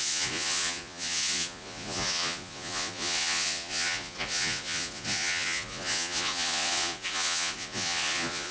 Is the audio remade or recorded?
remade